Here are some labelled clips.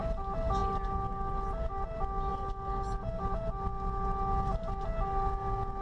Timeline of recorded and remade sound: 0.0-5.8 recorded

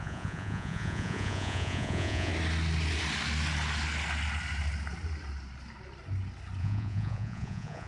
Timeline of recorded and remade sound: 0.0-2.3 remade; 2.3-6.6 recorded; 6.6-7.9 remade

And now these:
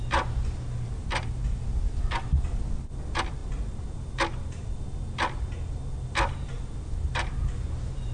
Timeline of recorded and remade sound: 0.0-8.1 recorded

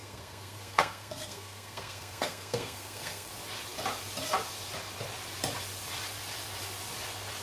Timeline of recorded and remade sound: 0.0-3.3 remade; 3.3-7.4 recorded

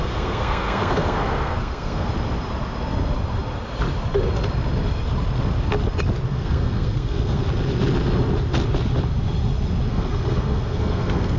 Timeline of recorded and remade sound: 0.0-2.1 remade; 2.1-6.3 recorded; 6.3-7.4 remade; 7.4-9.9 recorded; 9.9-11.4 remade